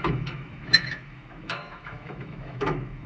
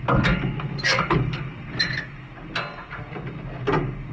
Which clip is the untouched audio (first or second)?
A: second